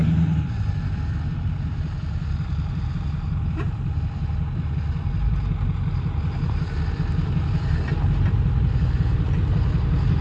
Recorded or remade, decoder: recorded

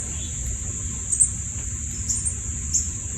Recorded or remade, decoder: recorded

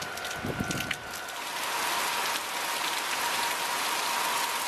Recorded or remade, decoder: recorded